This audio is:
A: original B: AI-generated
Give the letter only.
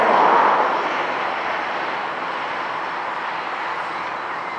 A